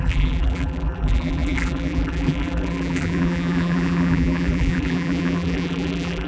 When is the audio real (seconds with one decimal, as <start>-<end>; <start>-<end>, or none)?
none